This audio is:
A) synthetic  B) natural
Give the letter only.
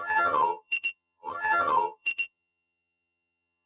A